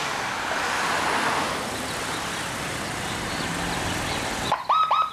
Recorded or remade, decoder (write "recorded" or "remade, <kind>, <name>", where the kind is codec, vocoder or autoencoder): recorded